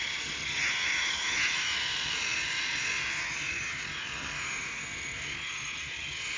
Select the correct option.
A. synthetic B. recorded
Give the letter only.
A